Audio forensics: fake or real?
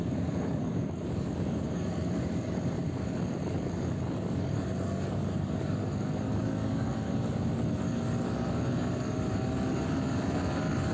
fake